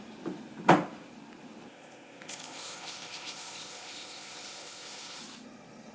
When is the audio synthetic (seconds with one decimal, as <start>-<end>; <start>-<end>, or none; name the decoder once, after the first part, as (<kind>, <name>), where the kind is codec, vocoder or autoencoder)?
1.7-5.2 (codec, ZipCodec)